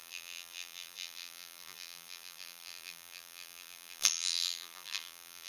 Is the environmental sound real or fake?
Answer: fake